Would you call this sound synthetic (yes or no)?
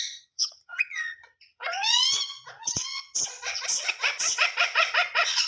yes